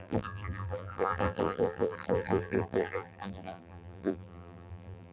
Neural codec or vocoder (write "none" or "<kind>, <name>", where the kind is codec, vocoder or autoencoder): vocoder, BigVGAN v2